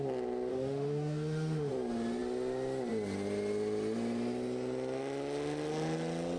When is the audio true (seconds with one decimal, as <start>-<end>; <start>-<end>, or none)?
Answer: 0.0-0.5; 1.7-6.4